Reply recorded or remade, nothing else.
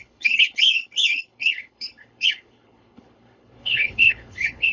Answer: remade